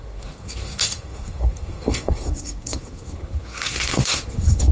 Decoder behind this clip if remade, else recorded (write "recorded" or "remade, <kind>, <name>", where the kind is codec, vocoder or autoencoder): remade, codec, SNAC